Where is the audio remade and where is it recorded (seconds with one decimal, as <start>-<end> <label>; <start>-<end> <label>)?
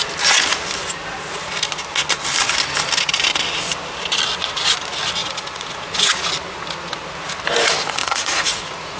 0.0-5.2 recorded; 5.2-6.3 remade; 6.3-8.0 recorded; 8.0-9.0 remade